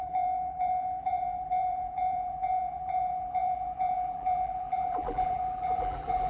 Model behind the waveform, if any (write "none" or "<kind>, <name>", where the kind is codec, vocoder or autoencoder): vocoder, BigVGAN v2